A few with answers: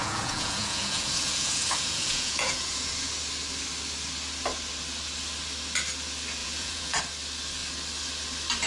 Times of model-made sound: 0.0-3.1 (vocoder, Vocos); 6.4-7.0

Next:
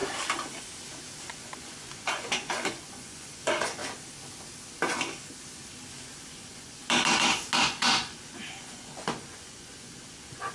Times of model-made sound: 1.2-3.8 (vocoder, Vocos); 5.9-6.8; 7.6-10.5

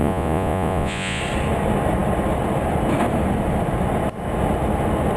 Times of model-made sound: 0.0-1.2 (vocoder, Vocos)

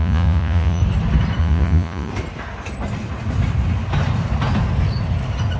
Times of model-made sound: 0.0-0.8 (vocoder, Vocos); 1.4-2.1

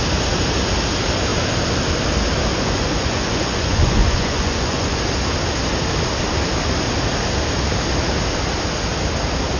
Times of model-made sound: 2.5-5.0 (vocoder, Vocos)

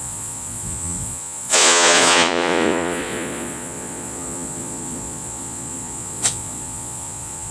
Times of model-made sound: 0.0-7.5 (vocoder, Vocos)

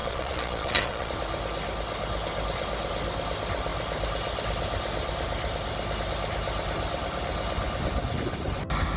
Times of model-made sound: 0.0-1.1 (vocoder, Vocos)